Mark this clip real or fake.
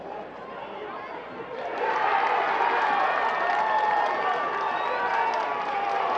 real